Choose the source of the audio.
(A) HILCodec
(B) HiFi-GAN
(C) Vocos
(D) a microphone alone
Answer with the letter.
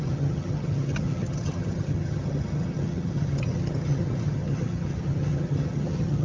B